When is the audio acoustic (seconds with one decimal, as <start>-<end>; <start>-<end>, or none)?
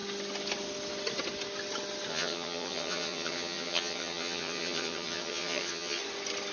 0.0-2.1; 6.0-6.5